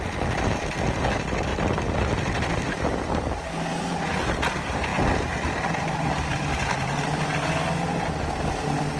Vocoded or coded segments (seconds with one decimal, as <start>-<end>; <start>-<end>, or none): none